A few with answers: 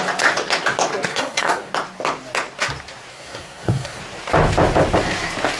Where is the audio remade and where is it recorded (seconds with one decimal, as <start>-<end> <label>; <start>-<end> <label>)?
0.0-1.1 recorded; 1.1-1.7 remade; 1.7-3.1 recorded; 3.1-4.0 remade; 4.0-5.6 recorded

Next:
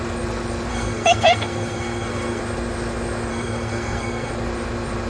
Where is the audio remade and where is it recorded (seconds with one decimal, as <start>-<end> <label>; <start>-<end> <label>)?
0.0-0.7 recorded; 0.7-2.4 remade; 2.4-3.3 recorded; 3.3-4.3 remade; 4.3-5.1 recorded

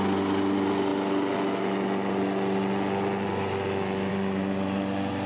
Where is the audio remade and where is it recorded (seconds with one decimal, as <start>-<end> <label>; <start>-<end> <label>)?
0.0-5.3 recorded

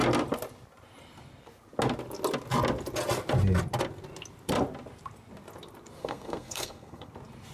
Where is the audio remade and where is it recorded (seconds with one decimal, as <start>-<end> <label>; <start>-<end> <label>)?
0.0-6.0 recorded; 6.0-7.1 remade; 7.1-7.5 recorded